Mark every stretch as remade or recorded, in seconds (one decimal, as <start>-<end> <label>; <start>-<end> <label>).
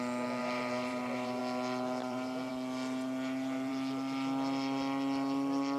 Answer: 0.0-0.4 recorded; 0.4-1.4 remade; 1.4-2.0 recorded; 2.0-2.5 remade; 2.5-5.8 recorded